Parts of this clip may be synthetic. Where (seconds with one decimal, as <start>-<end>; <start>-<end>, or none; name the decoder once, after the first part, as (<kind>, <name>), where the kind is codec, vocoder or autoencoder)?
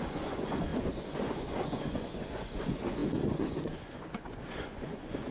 0.0-5.3 (vocoder, Vocos)